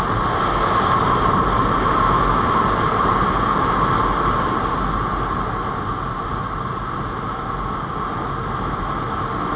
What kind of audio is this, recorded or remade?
recorded